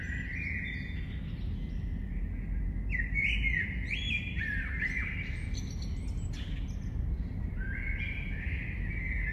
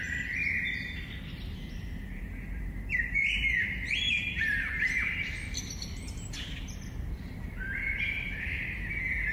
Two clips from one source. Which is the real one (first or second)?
first